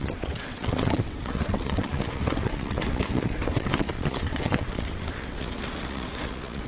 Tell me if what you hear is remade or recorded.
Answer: remade